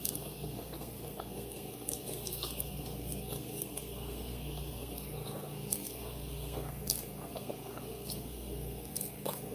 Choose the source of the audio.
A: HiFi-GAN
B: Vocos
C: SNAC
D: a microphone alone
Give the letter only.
C